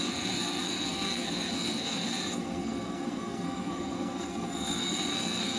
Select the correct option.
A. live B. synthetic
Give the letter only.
B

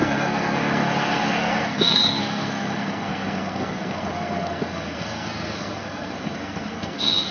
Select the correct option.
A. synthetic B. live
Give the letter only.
A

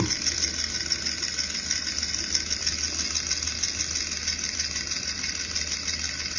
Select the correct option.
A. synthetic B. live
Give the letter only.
B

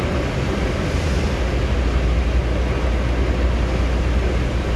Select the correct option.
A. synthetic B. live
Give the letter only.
B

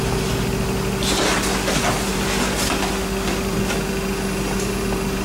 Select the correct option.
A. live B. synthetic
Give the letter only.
A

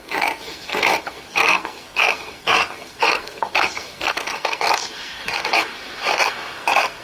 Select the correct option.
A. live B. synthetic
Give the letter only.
B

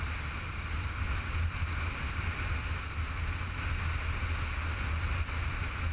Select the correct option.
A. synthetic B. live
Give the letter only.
B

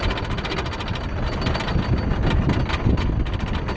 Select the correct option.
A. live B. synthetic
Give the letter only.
A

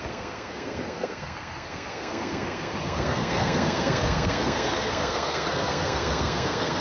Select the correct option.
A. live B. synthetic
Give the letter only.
B